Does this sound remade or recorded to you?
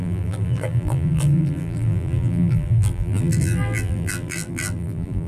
remade